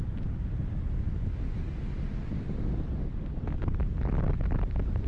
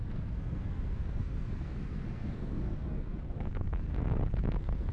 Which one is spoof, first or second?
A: second